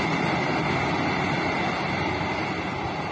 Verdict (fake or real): real